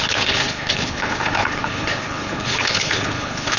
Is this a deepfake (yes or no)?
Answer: yes